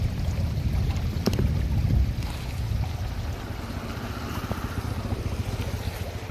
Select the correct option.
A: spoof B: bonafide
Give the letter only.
B